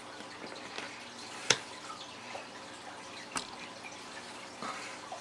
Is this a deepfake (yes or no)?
no